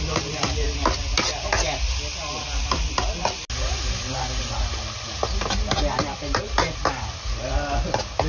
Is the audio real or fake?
real